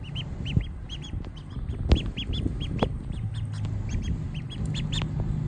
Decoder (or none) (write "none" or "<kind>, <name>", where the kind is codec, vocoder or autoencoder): none